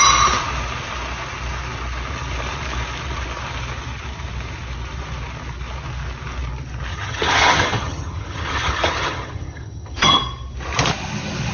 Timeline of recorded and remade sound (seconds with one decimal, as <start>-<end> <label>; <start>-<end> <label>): 0.0-6.9 recorded; 6.9-10.2 remade; 10.2-11.5 recorded